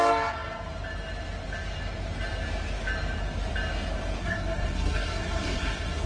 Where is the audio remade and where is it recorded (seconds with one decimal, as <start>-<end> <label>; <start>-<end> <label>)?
0.0-4.2 recorded; 4.2-6.1 remade